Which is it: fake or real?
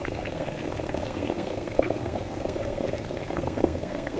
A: fake